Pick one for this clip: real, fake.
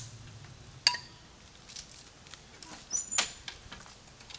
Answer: real